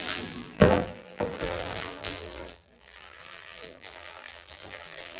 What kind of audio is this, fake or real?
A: fake